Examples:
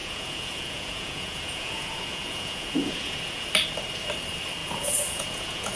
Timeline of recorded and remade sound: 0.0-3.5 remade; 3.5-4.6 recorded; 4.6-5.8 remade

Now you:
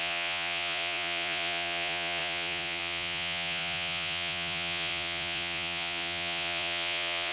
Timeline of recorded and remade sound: 0.0-7.3 remade

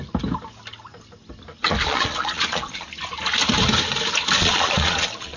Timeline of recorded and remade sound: 0.0-1.5 recorded; 1.5-2.9 remade; 2.9-4.4 recorded; 4.4-5.4 remade

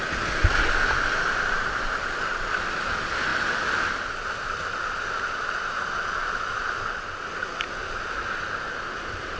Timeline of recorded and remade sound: 0.0-9.4 recorded

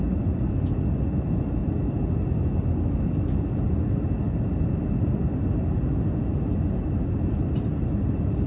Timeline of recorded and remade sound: 0.0-8.5 recorded

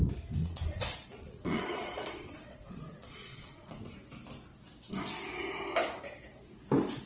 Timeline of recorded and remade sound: 0.0-0.4 recorded; 0.4-3.8 remade; 3.8-7.1 recorded

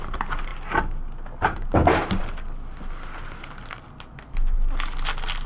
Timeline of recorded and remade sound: 0.0-5.5 recorded